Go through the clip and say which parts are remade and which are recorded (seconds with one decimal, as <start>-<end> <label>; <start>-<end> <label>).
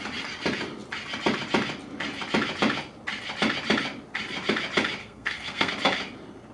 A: 0.0-5.0 recorded; 5.0-5.7 remade; 5.7-6.5 recorded